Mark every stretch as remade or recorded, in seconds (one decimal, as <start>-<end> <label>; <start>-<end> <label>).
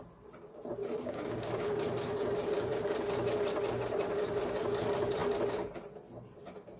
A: 0.0-0.8 recorded; 0.8-1.5 remade; 1.5-6.8 recorded